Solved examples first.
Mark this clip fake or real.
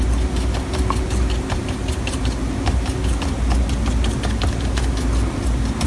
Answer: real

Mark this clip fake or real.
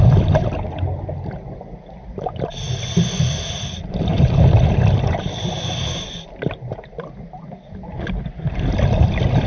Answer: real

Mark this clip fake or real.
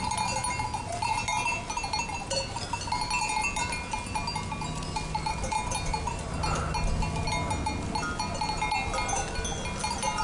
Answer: real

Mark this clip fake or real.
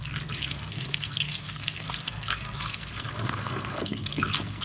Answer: fake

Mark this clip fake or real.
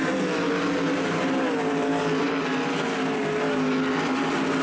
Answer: real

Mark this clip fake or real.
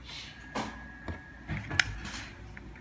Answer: real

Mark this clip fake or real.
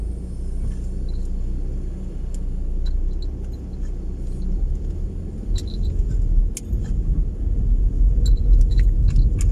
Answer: real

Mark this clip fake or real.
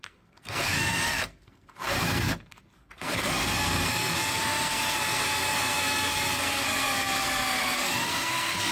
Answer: fake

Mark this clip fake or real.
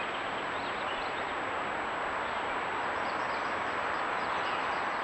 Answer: real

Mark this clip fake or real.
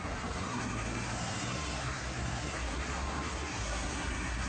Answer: fake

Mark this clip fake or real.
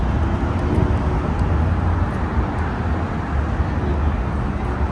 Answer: real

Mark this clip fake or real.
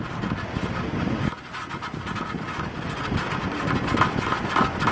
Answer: real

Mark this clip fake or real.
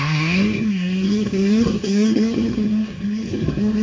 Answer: fake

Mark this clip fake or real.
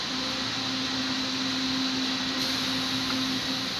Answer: real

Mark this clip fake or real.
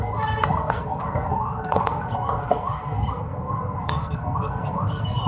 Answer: fake